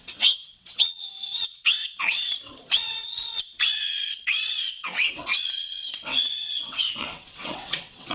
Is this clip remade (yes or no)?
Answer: yes